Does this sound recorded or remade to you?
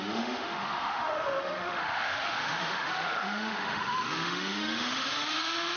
remade